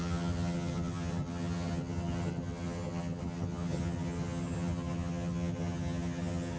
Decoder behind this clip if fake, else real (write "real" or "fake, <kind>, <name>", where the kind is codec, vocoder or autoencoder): fake, vocoder, HiFi-GAN